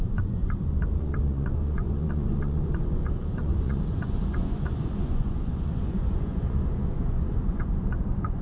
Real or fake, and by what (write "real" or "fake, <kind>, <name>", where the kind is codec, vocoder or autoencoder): fake, vocoder, Vocos